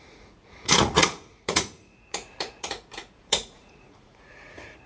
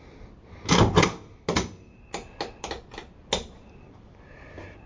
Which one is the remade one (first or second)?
first